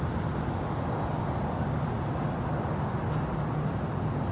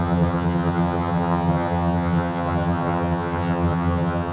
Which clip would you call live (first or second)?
first